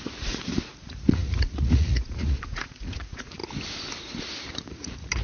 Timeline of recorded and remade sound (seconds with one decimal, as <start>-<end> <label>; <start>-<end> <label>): 0.0-3.4 remade; 3.4-4.7 recorded; 4.7-5.2 remade